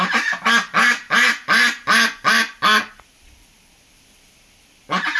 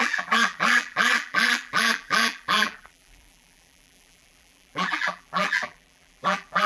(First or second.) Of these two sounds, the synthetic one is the second